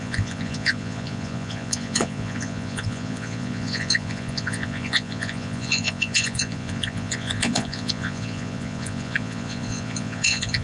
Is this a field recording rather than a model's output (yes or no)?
no